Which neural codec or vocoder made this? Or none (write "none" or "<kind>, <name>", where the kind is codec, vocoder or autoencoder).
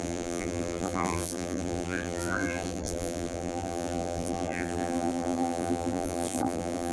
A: vocoder, BigVGAN v2